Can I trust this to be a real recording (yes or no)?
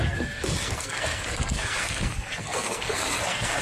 no